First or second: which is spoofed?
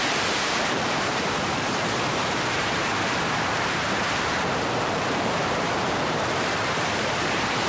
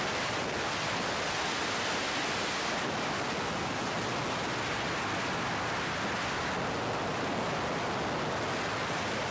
first